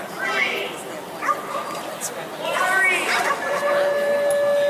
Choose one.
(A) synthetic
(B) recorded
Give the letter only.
B